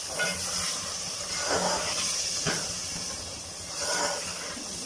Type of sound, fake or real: real